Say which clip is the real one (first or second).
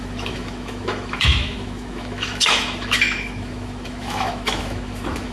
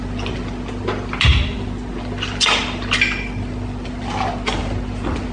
second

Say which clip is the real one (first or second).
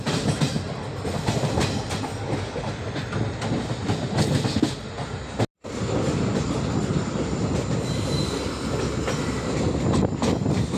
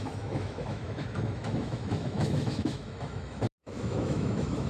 first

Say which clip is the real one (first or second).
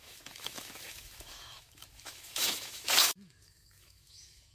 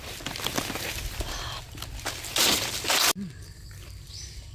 second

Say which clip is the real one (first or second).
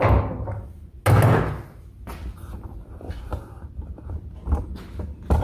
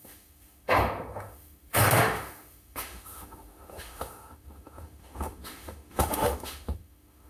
first